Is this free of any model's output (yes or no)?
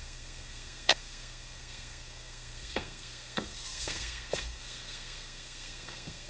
no